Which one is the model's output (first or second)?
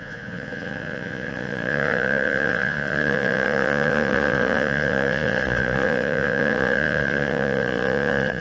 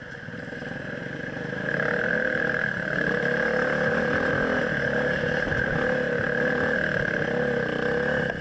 first